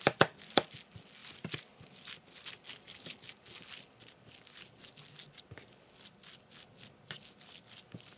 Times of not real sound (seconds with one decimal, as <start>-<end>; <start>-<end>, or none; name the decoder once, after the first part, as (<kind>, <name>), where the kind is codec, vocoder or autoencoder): none